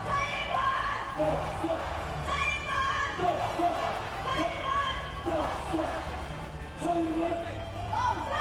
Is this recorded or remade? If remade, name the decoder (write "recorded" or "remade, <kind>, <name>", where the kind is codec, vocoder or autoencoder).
remade, vocoder, Vocos